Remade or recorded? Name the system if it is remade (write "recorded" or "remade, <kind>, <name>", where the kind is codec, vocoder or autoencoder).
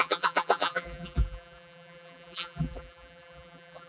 remade, vocoder, BigVGAN v2